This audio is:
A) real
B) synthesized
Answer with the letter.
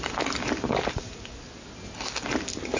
A